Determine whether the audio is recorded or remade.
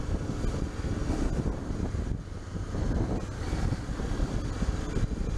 recorded